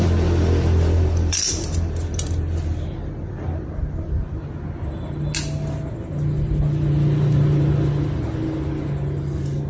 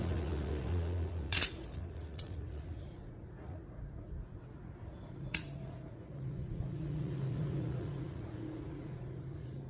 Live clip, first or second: first